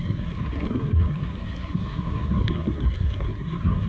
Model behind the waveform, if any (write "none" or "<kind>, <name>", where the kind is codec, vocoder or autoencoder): codec, SNAC